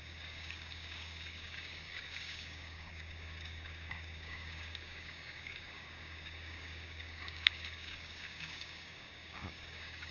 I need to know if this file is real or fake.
fake